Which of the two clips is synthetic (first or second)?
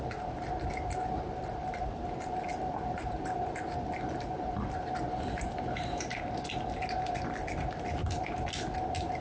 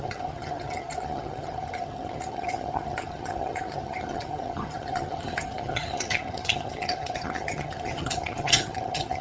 second